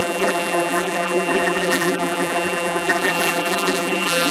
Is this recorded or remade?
remade